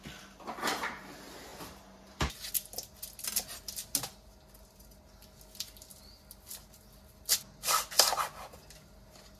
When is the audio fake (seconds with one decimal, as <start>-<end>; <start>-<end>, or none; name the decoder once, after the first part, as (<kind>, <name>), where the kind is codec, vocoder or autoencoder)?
none